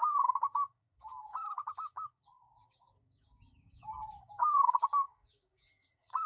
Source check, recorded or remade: remade